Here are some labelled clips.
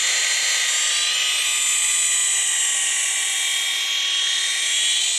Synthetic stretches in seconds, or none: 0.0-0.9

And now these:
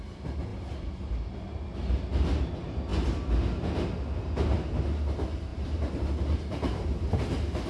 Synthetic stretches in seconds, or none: 0.5-1.1; 5.5-7.1